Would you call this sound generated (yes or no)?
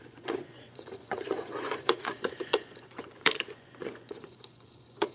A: yes